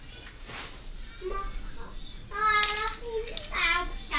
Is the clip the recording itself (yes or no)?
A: yes